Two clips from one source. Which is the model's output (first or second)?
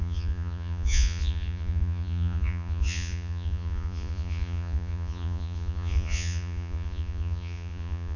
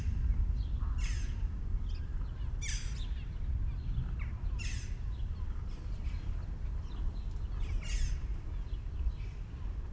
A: first